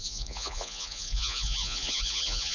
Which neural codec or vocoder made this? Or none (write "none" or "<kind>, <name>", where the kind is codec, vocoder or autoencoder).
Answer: vocoder, Vocos